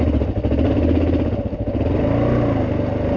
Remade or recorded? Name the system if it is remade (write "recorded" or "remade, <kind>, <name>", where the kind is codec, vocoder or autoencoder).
recorded